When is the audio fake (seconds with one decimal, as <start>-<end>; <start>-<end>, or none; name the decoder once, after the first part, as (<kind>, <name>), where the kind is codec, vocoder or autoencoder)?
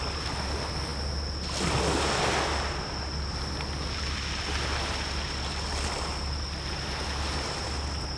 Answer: none